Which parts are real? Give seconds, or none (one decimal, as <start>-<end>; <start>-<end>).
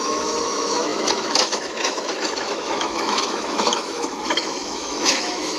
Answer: none